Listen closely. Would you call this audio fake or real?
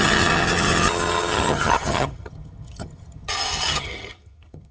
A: fake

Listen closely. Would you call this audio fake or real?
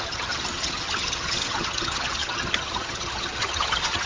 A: fake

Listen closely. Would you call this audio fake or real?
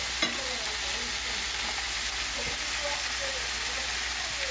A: real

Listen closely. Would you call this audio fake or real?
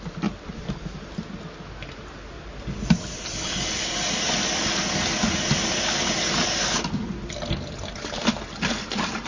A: real